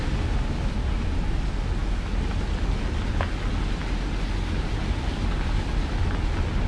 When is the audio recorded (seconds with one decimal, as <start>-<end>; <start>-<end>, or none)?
0.0-6.7